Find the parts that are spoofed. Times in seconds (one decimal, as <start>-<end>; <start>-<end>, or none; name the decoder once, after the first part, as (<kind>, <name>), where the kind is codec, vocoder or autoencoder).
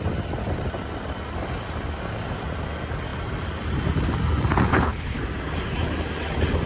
4.7-5.2 (codec, HILCodec)